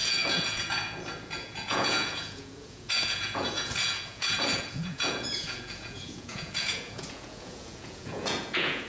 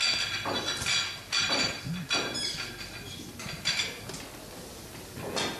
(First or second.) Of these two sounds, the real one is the second